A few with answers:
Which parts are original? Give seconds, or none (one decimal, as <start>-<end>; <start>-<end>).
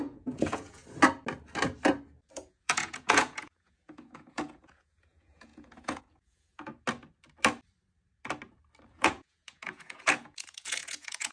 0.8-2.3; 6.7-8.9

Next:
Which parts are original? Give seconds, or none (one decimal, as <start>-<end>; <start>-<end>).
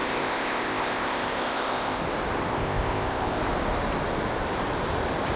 2.0-2.5; 3.4-5.4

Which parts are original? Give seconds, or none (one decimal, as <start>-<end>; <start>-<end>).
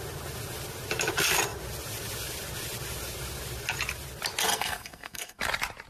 0.0-4.5; 5.4-5.9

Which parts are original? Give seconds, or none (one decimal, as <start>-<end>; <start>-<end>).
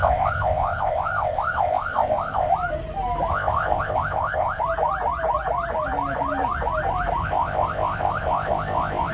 2.5-3.3; 4.6-7.2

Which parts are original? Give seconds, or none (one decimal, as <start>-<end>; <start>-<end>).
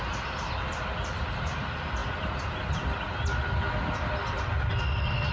0.0-5.3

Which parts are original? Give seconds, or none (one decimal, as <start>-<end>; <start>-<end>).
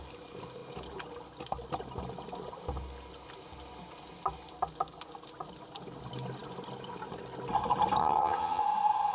0.0-8.0; 8.6-9.1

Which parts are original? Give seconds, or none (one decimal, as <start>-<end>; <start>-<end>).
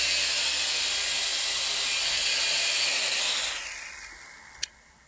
0.0-5.1